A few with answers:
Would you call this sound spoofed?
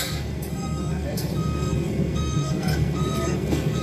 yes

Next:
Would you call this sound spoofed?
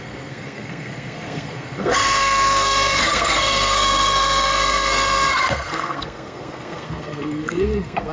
yes